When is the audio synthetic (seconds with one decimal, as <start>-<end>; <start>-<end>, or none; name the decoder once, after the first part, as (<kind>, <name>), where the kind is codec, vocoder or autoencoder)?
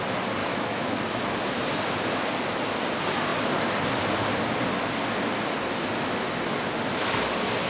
0.4-0.9 (autoencoder, DAC-VAE)